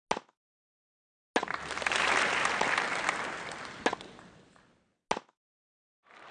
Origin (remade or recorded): recorded